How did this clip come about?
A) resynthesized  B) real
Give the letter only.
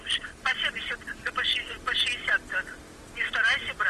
B